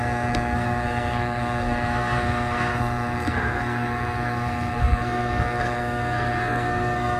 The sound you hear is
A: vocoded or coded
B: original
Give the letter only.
A